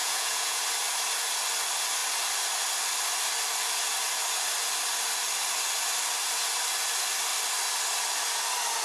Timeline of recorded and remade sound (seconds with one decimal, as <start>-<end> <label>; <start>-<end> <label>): 0.0-0.6 remade; 0.6-8.8 recorded